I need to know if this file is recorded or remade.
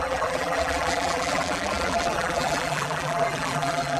remade